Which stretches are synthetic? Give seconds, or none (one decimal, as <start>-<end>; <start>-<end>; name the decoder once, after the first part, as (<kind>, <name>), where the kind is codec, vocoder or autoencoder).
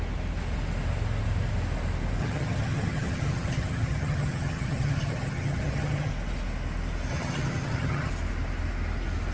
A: 2.2-6.1 (vocoder, HiFi-GAN); 7.1-8.1